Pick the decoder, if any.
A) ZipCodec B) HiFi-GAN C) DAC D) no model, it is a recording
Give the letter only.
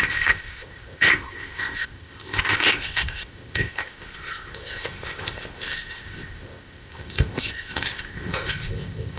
A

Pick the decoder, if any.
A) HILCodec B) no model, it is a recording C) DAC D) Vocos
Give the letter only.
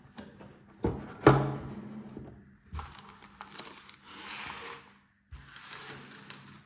B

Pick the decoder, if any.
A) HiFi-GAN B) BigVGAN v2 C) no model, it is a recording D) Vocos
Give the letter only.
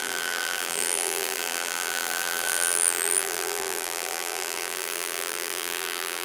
B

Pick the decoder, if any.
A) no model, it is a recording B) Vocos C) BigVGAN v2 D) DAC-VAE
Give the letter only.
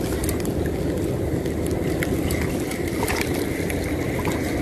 A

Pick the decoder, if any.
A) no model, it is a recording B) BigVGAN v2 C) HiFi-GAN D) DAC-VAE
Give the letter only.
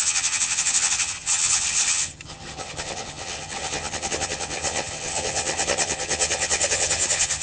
C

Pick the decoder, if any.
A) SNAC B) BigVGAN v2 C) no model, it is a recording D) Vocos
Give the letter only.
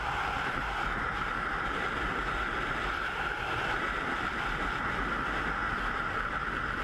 C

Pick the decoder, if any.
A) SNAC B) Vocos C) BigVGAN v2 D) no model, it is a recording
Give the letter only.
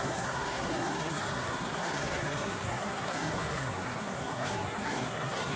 A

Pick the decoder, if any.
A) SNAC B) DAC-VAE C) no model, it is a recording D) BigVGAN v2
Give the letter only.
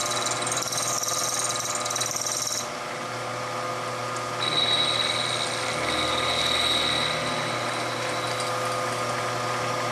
C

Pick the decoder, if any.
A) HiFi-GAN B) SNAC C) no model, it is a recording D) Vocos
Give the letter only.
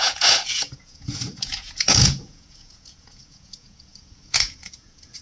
D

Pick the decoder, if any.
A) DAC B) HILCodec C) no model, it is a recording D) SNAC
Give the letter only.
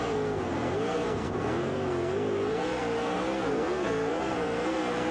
D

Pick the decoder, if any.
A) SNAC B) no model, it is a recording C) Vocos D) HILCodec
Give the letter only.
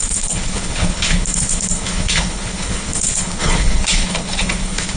D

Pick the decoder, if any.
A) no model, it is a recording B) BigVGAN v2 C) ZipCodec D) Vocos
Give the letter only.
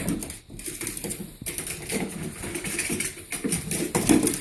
A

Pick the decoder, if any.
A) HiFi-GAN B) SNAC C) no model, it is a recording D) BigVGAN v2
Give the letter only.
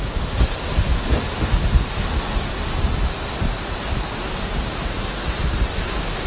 C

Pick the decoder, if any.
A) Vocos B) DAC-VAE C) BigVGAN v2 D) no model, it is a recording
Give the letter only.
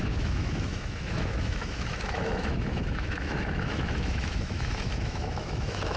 B